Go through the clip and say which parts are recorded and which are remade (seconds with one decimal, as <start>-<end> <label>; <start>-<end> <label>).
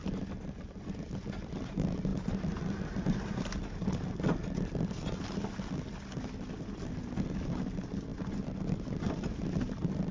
0.0-10.1 recorded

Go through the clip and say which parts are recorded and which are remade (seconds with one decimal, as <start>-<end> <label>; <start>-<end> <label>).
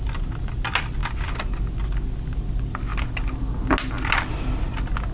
0.0-5.1 recorded